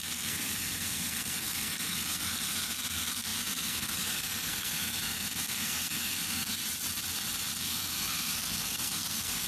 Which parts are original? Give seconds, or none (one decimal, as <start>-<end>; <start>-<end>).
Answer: 6.6-7.6